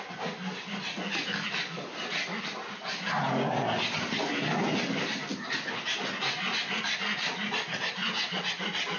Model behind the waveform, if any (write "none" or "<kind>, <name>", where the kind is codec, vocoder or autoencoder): none